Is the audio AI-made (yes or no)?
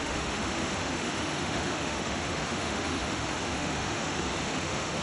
yes